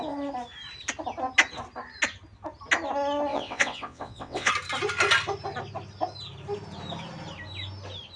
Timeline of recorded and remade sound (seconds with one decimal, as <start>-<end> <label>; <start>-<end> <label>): 0.0-3.3 recorded; 3.3-4.5 remade; 4.5-8.2 recorded